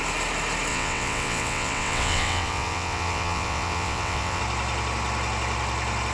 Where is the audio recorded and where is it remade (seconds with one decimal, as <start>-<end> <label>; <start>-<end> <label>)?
0.0-0.7 recorded; 0.7-4.4 remade; 4.4-6.1 recorded